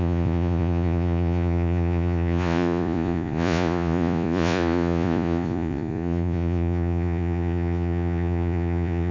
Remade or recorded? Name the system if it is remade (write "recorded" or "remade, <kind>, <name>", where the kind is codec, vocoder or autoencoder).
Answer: remade, vocoder, Vocos